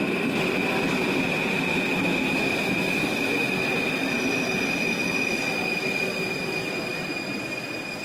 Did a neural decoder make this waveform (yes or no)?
no